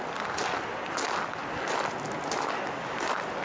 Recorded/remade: recorded